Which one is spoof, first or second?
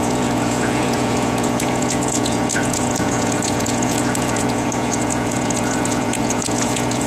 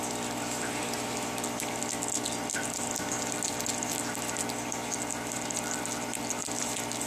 first